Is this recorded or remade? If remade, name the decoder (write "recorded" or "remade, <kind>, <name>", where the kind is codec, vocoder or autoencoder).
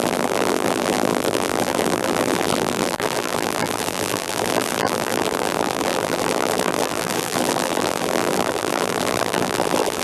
remade, vocoder, BigVGAN v2